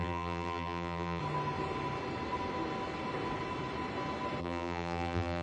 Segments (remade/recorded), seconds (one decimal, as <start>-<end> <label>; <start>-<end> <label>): 0.0-1.2 remade; 1.2-4.4 recorded; 4.4-5.4 remade